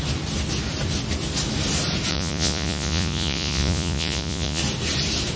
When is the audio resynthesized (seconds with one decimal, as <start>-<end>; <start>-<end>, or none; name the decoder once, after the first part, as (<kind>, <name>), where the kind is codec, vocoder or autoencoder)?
2.1-4.6 (vocoder, Vocos)